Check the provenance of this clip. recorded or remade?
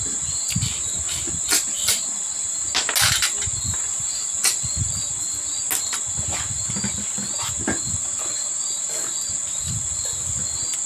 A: recorded